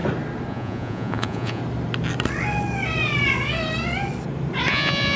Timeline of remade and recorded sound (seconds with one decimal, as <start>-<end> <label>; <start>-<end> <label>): 0.0-0.5 recorded; 0.5-1.6 remade; 1.6-4.7 recorded; 4.7-5.2 remade